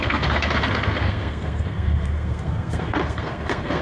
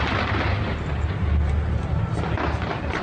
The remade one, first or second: first